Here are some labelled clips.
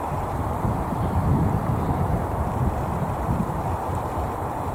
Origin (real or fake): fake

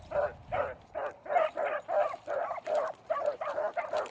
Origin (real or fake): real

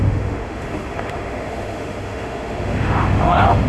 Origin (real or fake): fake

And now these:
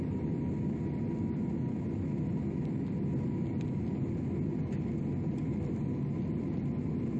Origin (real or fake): real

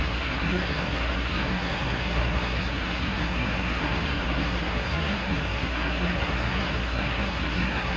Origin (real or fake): fake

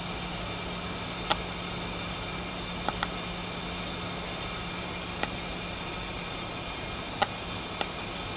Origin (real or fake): real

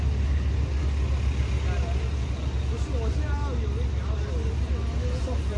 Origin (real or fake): real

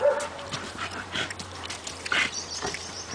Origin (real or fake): fake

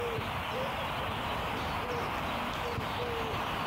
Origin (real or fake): real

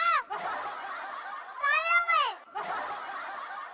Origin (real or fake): real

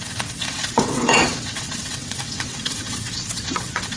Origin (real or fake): fake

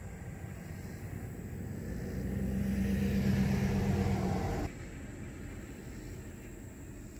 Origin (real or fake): real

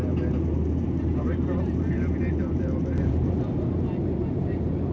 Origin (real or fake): fake